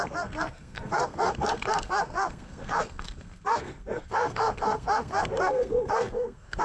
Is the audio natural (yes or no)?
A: no